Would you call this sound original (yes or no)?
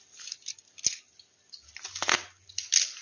yes